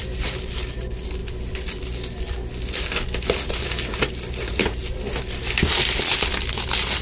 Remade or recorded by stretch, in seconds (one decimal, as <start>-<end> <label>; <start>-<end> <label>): 0.0-7.0 recorded

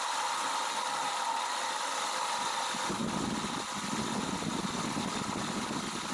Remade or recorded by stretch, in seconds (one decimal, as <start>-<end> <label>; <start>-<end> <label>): 0.0-6.1 recorded

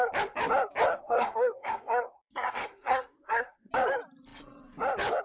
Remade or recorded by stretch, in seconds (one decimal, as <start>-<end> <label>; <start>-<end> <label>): 0.0-0.9 recorded; 0.9-3.7 remade; 3.7-5.2 recorded

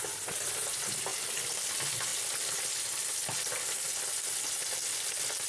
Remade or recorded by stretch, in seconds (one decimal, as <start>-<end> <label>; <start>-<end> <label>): 0.0-1.1 remade; 1.1-1.6 recorded; 1.6-2.1 remade; 2.1-5.5 recorded

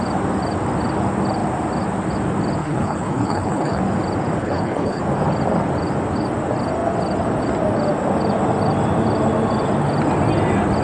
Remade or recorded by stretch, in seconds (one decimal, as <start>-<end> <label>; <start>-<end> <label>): 0.0-2.6 recorded; 2.6-3.8 remade; 3.8-4.4 recorded; 4.4-5.0 remade; 5.0-10.8 recorded